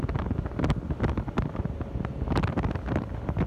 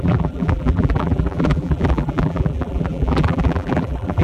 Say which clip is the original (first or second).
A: first